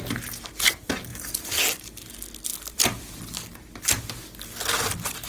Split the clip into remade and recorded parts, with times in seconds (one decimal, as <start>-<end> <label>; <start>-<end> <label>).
0.0-1.1 recorded; 1.1-1.6 remade; 1.6-2.5 recorded; 2.5-3.2 remade; 3.2-5.3 recorded